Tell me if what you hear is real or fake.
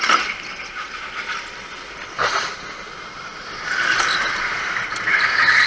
real